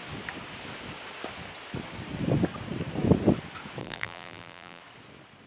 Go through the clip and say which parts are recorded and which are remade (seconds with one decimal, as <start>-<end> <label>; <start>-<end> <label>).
0.0-3.8 recorded; 3.8-4.8 remade; 4.8-5.5 recorded